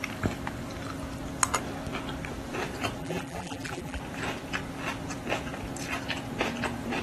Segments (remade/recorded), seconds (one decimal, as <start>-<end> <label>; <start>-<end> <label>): 0.0-3.0 recorded; 3.0-4.0 remade; 4.0-7.0 recorded